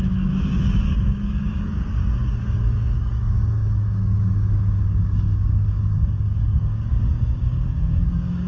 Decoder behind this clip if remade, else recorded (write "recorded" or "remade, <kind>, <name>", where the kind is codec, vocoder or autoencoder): remade, codec, DAC